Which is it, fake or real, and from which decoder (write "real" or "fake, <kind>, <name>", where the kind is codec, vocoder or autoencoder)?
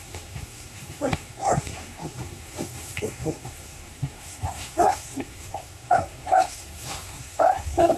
fake, codec, SNAC